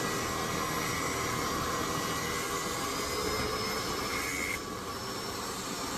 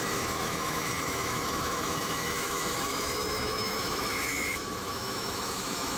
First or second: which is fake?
second